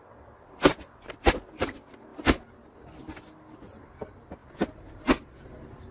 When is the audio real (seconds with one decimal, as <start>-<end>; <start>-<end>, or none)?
0.0-5.9